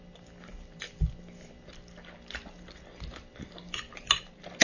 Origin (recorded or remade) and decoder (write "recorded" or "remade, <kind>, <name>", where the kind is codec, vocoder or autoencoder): recorded